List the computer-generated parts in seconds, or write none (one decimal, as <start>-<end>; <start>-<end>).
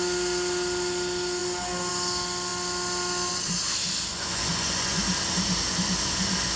4.1-5.0